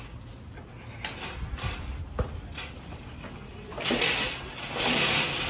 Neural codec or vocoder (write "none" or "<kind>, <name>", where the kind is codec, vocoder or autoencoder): none